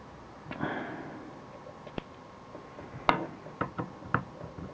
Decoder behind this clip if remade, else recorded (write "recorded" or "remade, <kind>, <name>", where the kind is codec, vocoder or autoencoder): recorded